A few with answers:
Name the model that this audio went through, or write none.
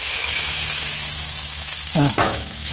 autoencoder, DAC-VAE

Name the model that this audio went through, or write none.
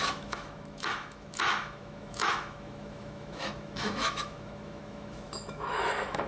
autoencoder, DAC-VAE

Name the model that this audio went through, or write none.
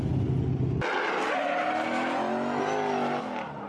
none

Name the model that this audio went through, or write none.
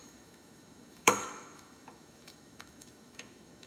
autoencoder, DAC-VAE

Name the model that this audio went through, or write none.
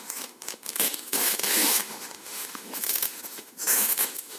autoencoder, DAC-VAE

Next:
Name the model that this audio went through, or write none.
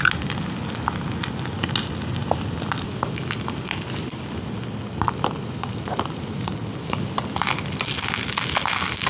none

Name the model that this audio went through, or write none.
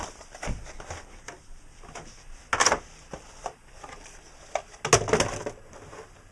none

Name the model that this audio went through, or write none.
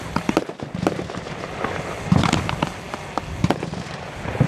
none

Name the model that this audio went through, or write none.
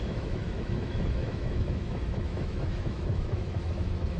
autoencoder, DAC-VAE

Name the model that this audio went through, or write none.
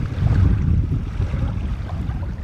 none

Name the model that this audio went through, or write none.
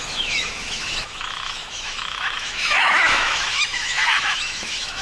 autoencoder, DAC-VAE